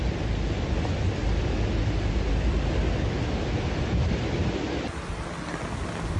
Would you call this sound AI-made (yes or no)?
no